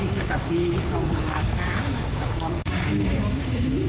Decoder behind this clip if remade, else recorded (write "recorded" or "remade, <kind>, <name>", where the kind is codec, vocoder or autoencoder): remade, codec, DAC